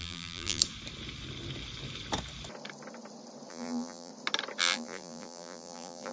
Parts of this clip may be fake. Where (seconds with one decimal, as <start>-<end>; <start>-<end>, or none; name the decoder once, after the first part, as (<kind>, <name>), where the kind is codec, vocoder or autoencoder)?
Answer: 0.0-0.6 (vocoder, BigVGAN v2); 3.5-4.1; 4.6-6.1